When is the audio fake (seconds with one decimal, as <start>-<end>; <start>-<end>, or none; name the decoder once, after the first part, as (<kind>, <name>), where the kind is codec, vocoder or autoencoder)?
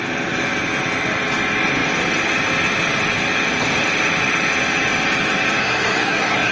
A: 5.6-6.5 (codec, SNAC)